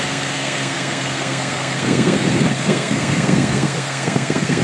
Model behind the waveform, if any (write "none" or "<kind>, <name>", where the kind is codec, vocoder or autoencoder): codec, SNAC